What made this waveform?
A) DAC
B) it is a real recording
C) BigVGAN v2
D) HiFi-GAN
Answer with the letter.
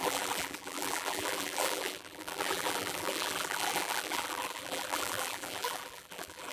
C